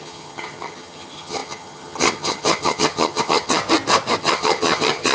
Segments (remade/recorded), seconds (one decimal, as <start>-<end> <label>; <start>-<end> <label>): 0.0-3.6 remade; 3.6-4.2 recorded; 4.2-5.1 remade